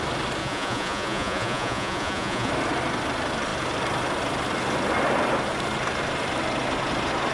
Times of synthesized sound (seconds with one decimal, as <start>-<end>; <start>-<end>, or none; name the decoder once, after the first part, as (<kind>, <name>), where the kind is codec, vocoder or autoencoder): 0.4-2.5 (vocoder, Vocos)